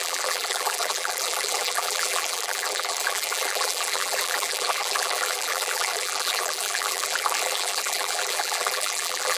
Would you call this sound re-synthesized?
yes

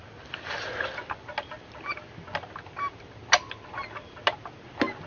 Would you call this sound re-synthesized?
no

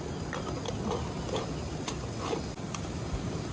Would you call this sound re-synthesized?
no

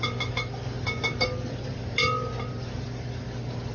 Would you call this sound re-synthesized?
no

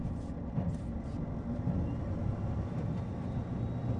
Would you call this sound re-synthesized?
no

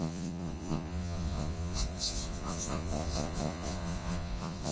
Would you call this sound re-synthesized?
yes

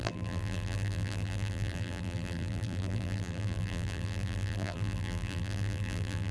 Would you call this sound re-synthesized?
yes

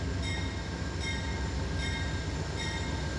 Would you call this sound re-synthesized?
no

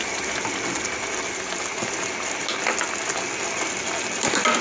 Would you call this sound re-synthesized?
no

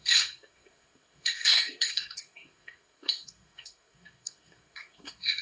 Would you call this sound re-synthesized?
yes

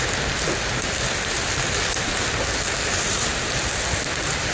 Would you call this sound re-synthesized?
no